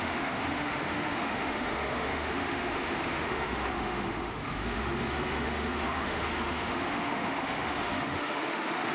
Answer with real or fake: fake